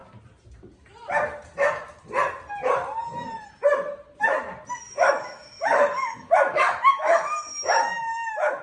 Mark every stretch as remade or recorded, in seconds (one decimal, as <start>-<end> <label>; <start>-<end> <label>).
0.0-4.9 recorded; 4.9-8.6 remade

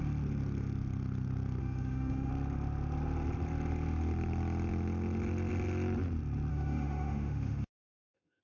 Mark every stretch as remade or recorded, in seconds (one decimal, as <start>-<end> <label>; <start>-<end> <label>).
0.0-1.6 recorded; 1.6-2.3 remade; 2.3-6.5 recorded; 6.5-8.4 remade

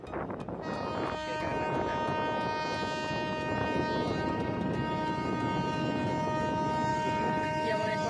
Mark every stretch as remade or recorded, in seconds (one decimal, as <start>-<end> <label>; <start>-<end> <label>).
0.0-6.9 recorded; 6.9-8.1 remade

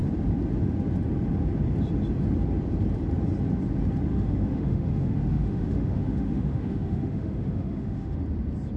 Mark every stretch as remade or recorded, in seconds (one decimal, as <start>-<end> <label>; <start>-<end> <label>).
0.0-4.1 recorded; 4.1-8.2 remade; 8.2-8.8 recorded

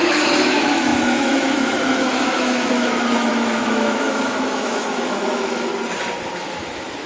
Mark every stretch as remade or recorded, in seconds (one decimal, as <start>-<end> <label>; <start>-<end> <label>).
0.0-5.7 remade; 5.7-6.4 recorded; 6.4-7.1 remade